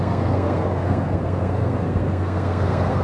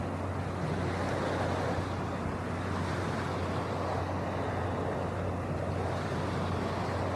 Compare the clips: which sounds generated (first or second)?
first